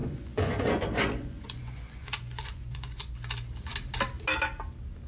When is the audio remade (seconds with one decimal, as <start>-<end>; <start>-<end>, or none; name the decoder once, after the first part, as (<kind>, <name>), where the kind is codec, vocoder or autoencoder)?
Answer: 0.0-3.1 (vocoder, Vocos)